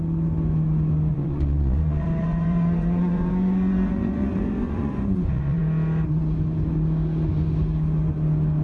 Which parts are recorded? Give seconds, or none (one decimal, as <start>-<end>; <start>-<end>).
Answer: 0.0-1.1; 5.6-8.6